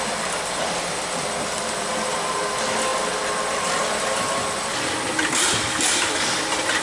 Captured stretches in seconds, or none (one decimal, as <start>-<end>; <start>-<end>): 0.0-6.8